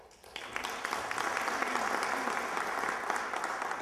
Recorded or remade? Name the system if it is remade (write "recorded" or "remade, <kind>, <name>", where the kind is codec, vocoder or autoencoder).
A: recorded